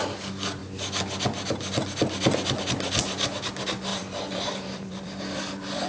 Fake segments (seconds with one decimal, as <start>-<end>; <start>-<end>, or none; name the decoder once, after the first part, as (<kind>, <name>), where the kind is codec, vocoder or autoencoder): 3.9-5.2 (vocoder, BigVGAN v2)